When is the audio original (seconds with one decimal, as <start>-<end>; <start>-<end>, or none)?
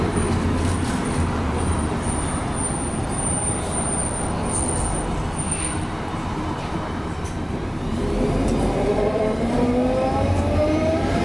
4.0-5.7